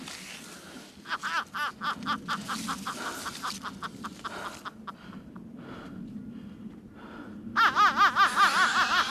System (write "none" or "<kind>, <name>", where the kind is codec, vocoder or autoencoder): none